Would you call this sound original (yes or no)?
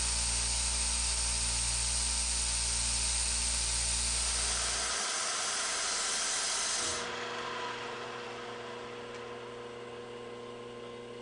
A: yes